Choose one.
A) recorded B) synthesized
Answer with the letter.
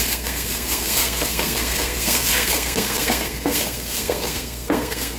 B